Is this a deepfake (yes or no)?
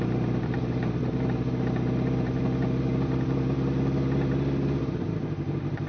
no